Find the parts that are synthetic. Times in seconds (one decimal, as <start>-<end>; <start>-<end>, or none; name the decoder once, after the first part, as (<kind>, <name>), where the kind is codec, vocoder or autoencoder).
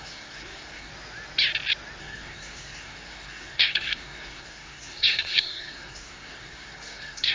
0.0-0.9 (codec, SNAC); 2.0-7.3